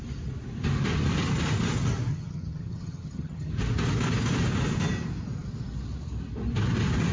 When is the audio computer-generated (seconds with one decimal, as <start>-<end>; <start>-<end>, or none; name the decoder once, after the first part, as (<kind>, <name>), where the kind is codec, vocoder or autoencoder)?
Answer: 2.1-3.5 (vocoder, HiFi-GAN)